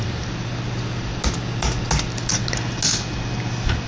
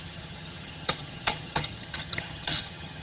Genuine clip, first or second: first